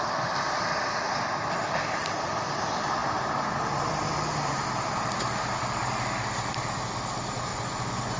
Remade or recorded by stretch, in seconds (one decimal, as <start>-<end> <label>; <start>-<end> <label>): 0.0-7.5 recorded; 7.5-8.2 remade